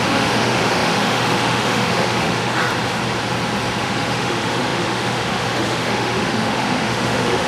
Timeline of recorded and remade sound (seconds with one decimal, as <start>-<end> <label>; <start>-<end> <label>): 0.0-2.7 remade; 2.7-3.8 recorded; 3.8-7.5 remade